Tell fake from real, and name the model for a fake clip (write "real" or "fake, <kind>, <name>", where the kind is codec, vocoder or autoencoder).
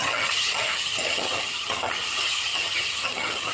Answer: fake, vocoder, HiFi-GAN